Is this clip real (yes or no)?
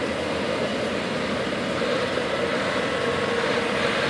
yes